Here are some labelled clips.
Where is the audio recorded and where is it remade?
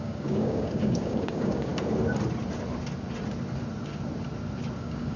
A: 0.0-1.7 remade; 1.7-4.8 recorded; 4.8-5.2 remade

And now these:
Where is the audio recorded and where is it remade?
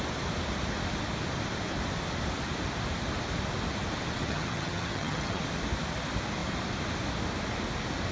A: 0.0-4.2 recorded; 4.2-5.4 remade; 5.4-8.1 recorded